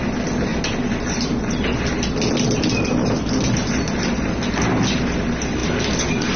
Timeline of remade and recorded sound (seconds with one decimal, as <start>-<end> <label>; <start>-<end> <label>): 0.0-6.4 recorded